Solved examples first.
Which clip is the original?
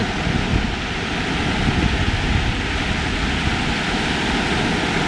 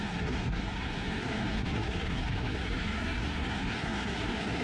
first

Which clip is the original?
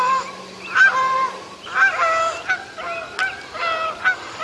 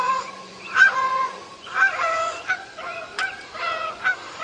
first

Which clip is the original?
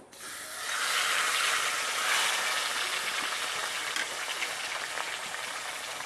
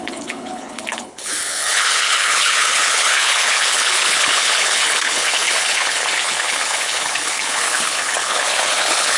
first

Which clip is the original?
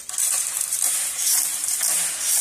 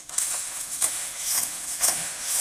first